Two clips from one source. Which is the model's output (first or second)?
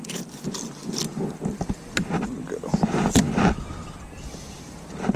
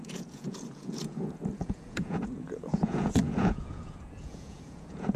second